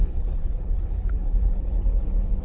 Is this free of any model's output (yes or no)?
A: no